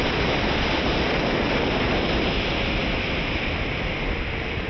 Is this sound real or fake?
real